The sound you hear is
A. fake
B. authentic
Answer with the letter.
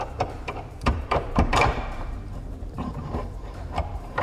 A